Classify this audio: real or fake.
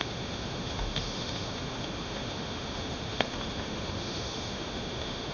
fake